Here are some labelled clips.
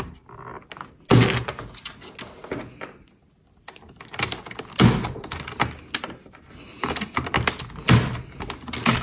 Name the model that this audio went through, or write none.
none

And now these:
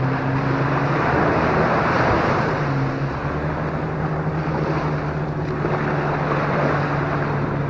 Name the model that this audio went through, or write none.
none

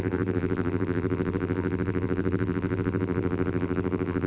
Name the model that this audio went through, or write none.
vocoder, BigVGAN v2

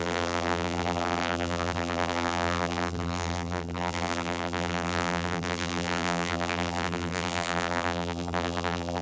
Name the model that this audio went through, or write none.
vocoder, BigVGAN v2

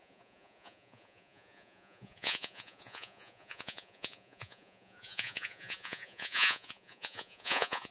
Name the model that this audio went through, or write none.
vocoder, Vocos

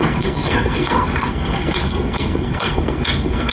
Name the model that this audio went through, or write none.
codec, SNAC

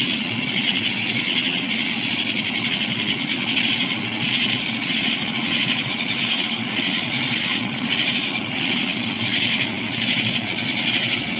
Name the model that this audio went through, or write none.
vocoder, Vocos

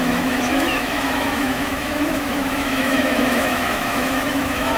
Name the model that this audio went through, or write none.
autoencoder, DAC-VAE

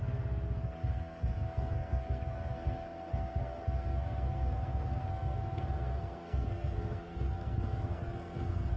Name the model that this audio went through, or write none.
codec, SNAC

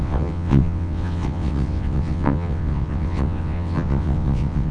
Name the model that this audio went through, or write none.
vocoder, WaveNeXt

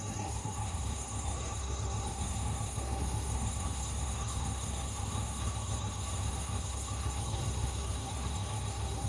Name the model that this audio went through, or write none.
codec, SNAC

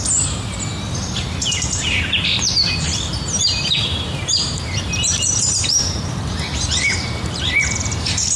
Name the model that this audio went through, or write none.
vocoder, BigVGAN v2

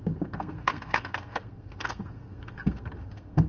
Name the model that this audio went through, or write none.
codec, SNAC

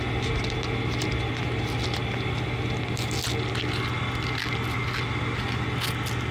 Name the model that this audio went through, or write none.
none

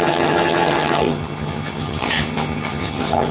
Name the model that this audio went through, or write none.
vocoder, HiFi-GAN